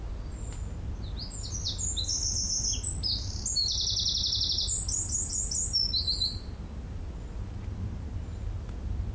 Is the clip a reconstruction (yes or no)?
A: no